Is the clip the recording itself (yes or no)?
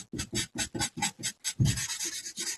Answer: yes